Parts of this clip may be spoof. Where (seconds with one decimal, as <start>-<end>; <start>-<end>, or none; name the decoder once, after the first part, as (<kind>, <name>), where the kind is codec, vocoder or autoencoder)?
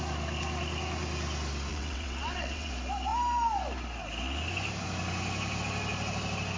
1.7-2.7 (vocoder, WaveNeXt)